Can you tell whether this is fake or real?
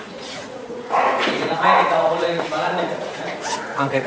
fake